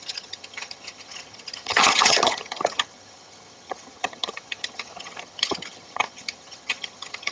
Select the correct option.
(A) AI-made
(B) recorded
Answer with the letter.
A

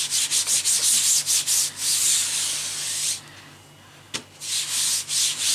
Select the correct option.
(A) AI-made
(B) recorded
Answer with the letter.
B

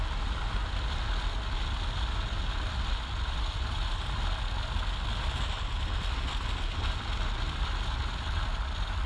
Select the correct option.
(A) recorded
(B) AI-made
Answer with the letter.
A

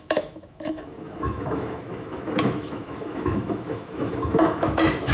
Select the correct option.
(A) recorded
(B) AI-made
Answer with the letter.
B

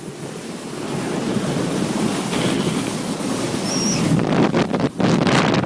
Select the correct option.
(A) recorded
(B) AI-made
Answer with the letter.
A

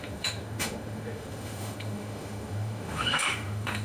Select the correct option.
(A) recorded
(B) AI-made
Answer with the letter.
B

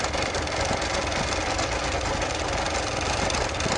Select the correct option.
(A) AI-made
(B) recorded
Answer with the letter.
A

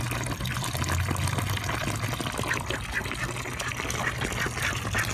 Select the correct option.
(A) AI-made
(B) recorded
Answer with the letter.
B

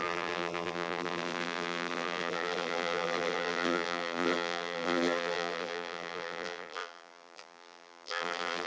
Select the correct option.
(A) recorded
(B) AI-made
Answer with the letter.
B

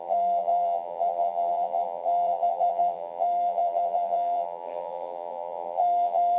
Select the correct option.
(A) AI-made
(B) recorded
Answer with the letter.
A